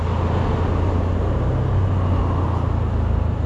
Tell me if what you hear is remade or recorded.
recorded